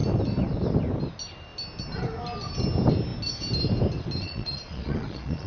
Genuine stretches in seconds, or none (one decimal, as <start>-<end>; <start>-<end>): 0.0-4.2

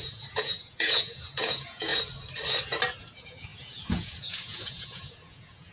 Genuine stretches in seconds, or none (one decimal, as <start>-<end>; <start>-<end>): 1.9-3.0

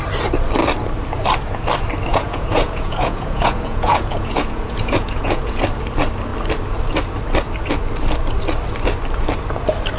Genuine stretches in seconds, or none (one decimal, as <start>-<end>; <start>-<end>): 0.0-2.1; 5.6-10.0

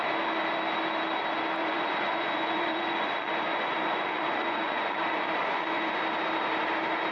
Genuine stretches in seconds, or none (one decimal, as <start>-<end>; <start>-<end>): 0.0-1.6; 5.9-7.1

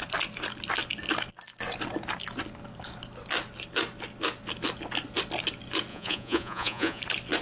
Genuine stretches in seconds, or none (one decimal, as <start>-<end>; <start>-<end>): 0.0-5.9; 7.0-7.4

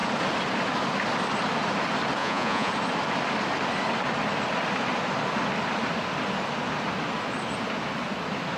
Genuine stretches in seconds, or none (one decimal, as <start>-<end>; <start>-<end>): 0.0-2.2; 2.7-8.6